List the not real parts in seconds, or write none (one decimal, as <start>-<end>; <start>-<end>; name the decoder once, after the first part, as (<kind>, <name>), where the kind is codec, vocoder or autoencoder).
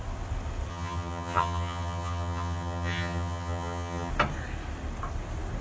0.7-4.1 (vocoder, HiFi-GAN)